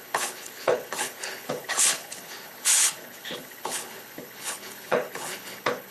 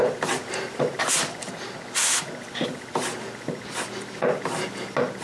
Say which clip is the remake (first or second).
first